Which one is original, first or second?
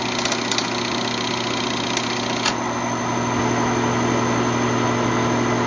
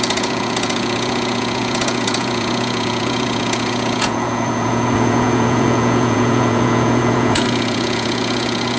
first